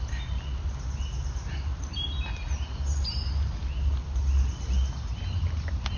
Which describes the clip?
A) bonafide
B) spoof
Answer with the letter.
A